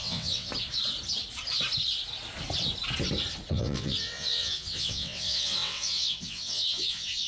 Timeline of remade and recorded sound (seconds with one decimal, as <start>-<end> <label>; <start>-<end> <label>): 0.0-0.5 remade; 0.5-3.5 recorded; 3.5-7.3 remade